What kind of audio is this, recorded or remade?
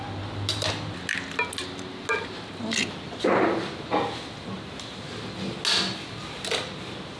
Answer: recorded